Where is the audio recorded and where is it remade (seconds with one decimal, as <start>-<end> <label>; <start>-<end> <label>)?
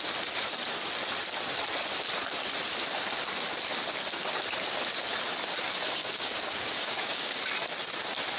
0.0-6.0 recorded; 6.0-7.5 remade; 7.5-8.4 recorded